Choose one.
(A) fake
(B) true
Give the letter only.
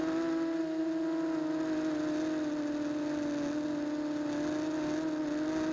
B